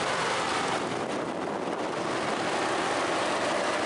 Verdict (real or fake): real